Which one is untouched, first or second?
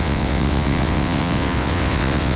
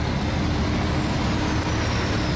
second